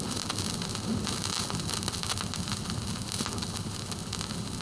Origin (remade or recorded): recorded